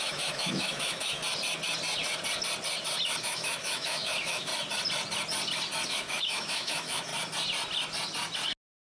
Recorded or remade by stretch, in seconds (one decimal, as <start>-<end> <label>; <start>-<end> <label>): 0.0-1.2 remade; 1.2-3.2 recorded; 3.2-4.5 remade; 4.5-5.9 recorded; 5.9-7.1 remade; 7.1-8.8 recorded